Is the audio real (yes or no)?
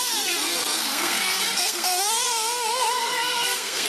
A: no